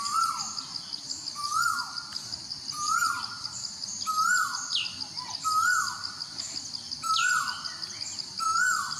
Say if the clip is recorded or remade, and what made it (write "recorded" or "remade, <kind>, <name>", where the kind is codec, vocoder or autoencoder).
recorded